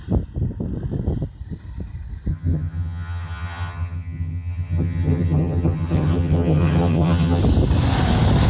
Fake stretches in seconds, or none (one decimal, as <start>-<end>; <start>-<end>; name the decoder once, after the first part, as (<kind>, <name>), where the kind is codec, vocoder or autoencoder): 2.3-7.4 (vocoder, HiFi-GAN)